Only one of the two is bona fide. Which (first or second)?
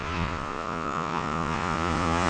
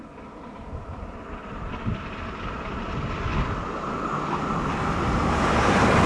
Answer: second